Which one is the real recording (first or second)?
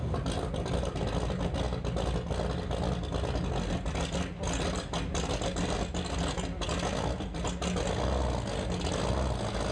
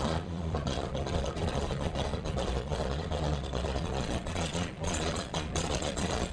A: first